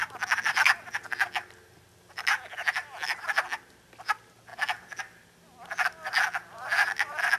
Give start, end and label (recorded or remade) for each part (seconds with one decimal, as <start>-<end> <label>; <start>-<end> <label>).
0.0-7.4 recorded